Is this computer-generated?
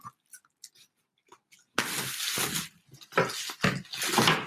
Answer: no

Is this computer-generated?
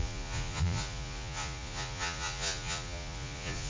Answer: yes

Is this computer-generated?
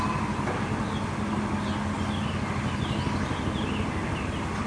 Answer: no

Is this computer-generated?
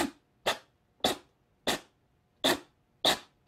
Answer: no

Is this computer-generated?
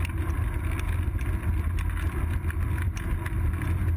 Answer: no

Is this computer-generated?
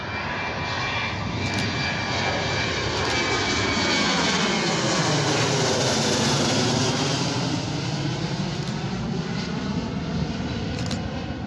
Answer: no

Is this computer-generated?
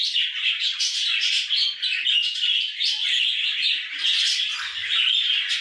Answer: no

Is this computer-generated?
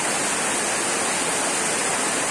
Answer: no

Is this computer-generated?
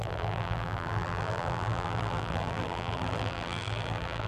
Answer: yes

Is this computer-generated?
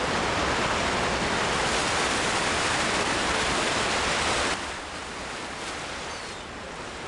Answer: no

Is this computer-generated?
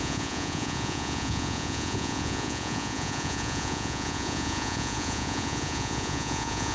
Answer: yes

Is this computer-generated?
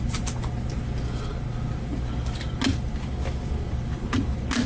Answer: no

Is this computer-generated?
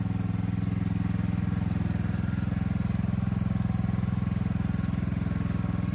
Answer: no